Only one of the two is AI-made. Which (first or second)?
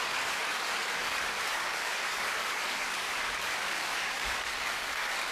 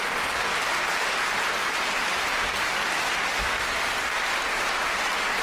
first